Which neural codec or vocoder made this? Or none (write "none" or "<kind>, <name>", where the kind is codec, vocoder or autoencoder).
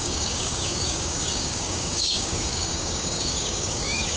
codec, DAC